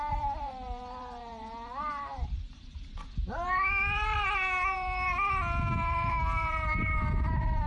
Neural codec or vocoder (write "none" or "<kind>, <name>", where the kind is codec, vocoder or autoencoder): vocoder, BigVGAN v2